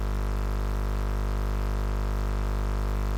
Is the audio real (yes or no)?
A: yes